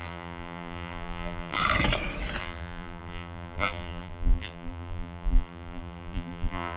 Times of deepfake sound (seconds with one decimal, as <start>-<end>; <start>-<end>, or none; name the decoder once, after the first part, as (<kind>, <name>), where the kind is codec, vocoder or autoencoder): 0.0-1.6 (vocoder, BigVGAN v2); 2.4-6.8